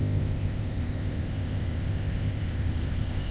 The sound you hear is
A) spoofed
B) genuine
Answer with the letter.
A